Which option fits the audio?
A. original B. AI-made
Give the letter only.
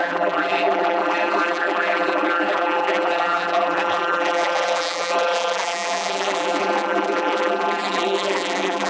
B